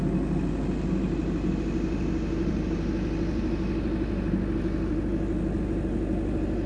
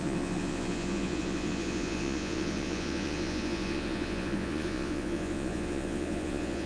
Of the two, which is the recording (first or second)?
first